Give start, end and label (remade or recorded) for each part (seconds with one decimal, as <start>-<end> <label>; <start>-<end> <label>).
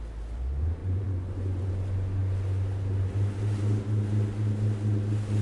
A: 0.0-0.8 recorded; 0.8-1.7 remade; 1.7-5.4 recorded